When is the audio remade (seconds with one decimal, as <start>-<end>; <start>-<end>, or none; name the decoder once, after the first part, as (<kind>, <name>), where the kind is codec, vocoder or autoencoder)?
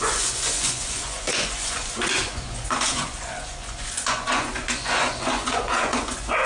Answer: 0.0-6.5 (vocoder, Vocos)